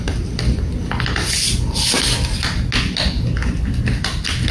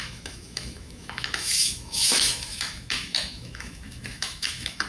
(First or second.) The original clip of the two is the first